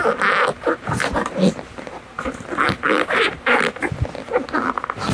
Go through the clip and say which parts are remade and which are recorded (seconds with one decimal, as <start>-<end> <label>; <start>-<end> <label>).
0.0-0.5 recorded; 0.5-3.6 remade; 3.6-5.1 recorded